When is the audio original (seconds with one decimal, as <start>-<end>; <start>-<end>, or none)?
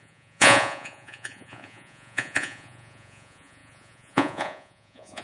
none